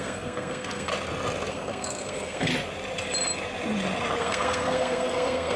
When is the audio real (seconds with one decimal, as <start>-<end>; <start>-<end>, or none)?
0.9-1.5; 2.5-4.2